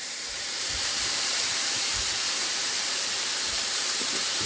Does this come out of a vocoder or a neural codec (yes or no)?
yes